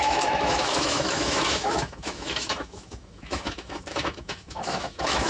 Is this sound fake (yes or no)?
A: yes